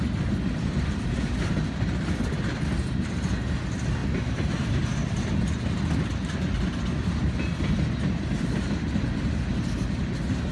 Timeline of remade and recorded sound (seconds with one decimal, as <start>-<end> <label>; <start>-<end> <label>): 0.0-10.5 recorded